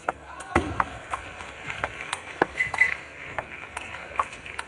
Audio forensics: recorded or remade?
remade